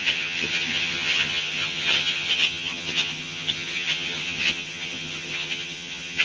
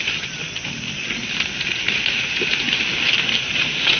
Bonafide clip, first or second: second